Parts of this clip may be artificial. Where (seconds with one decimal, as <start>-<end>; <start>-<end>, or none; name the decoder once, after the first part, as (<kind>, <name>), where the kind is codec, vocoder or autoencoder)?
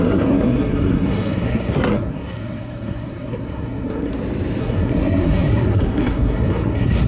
0.0-4.1 (codec, SNAC); 4.6-7.1